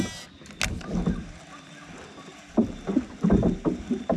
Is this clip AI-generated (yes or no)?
no